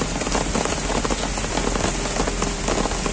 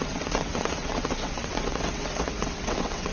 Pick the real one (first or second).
first